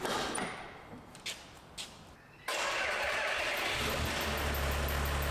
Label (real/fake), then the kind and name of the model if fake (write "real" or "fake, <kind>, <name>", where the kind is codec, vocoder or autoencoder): real